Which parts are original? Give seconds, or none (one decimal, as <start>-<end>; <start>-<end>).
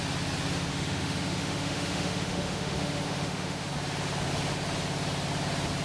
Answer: 0.0-0.7; 3.7-5.8